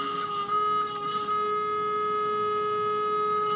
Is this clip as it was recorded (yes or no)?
yes